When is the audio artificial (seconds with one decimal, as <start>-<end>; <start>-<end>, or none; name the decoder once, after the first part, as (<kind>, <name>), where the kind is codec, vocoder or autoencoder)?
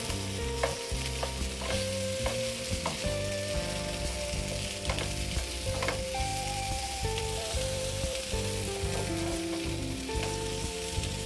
6.3-8.2 (vocoder, BigVGAN v2)